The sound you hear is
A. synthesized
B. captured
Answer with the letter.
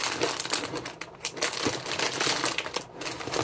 B